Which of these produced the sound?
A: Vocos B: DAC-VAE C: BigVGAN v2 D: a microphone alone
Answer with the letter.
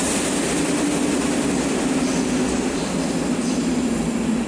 D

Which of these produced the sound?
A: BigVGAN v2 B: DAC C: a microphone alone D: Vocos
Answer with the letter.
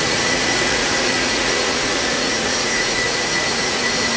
D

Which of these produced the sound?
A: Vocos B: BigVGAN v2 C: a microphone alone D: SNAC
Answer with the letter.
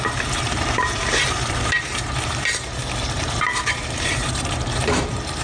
B